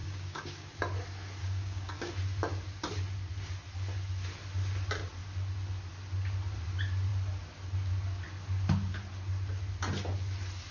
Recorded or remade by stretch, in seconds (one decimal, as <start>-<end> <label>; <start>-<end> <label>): 0.0-0.7 remade; 0.7-1.4 recorded; 1.4-2.1 remade; 2.1-10.7 recorded